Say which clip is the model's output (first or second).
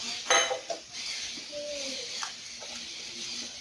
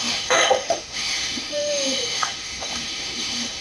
second